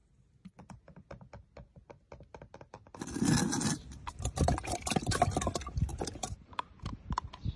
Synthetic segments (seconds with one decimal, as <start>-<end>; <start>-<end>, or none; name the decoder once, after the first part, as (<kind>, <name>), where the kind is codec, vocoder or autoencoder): 5.9-6.7 (vocoder, BigVGAN v2)